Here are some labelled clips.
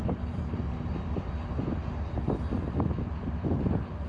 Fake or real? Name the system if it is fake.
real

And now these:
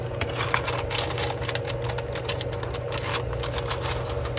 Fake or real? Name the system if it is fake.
real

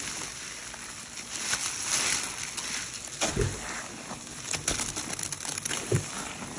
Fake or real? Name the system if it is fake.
real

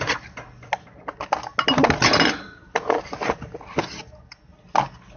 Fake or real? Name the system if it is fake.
real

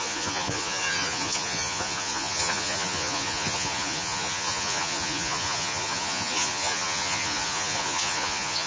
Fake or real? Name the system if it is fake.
fake, vocoder, Vocos